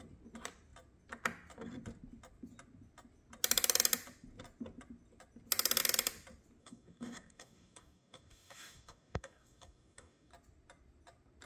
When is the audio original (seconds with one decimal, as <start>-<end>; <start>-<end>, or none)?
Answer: 0.0-6.6; 10.3-11.5